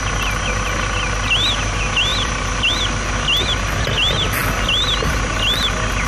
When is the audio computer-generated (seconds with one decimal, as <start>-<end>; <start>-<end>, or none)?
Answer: 2.1-2.7